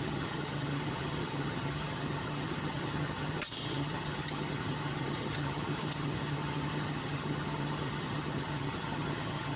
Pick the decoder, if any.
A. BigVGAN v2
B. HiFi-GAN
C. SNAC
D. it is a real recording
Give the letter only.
B